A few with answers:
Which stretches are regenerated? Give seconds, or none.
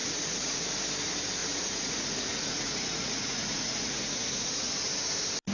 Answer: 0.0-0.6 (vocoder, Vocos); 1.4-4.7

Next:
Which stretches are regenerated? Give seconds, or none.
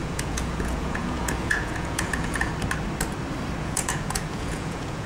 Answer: 0.0-2.5 (vocoder, Vocos); 3.6-5.1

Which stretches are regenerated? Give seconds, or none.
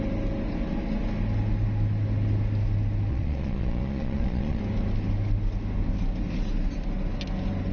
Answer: 3.1-4.6 (vocoder, Vocos)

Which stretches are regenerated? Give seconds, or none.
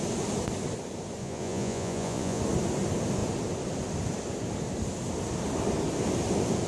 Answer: 1.2-2.4 (vocoder, Vocos)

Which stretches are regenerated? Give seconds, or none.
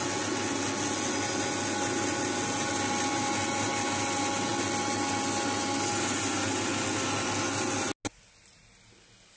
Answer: none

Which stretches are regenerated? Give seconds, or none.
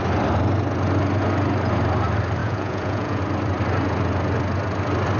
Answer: 2.4-3.2 (vocoder, Vocos)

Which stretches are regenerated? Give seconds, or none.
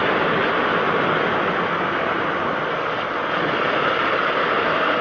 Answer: none